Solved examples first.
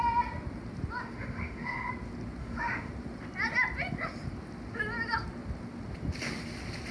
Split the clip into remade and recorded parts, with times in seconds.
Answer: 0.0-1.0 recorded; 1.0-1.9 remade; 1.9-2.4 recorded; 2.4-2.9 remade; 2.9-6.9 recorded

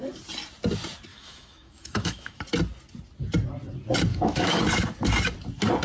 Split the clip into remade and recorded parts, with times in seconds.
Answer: 0.0-1.1 recorded; 1.1-2.4 remade; 2.4-4.1 recorded; 4.1-4.6 remade; 4.6-5.8 recorded

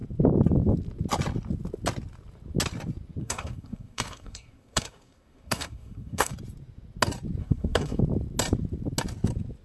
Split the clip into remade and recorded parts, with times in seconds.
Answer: 0.0-3.2 recorded; 3.2-6.3 remade; 6.3-7.4 recorded; 7.4-8.0 remade; 8.0-9.6 recorded

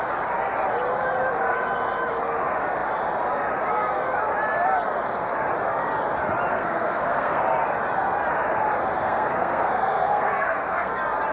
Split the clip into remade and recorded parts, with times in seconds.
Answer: 0.0-6.5 recorded; 6.5-7.4 remade; 7.4-9.0 recorded; 9.0-10.9 remade; 10.9-11.3 recorded

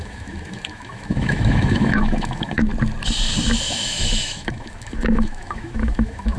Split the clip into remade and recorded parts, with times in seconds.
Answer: 0.0-2.7 remade; 2.7-3.6 recorded; 3.6-6.4 remade